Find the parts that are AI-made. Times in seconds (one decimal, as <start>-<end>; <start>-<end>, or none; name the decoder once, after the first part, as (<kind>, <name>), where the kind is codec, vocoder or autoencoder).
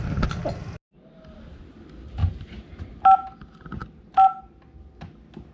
2.2-3.0 (vocoder, BigVGAN v2)